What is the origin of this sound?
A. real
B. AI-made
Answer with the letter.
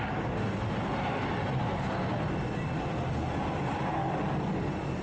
A